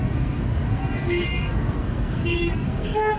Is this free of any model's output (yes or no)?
no